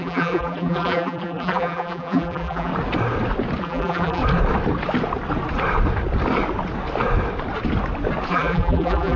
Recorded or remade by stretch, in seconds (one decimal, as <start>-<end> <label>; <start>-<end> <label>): 0.0-2.7 remade; 2.7-3.6 recorded; 3.6-4.2 remade; 4.2-8.3 recorded; 8.3-9.2 remade